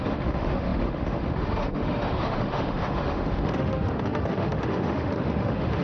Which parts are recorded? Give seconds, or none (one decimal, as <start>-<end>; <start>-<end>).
none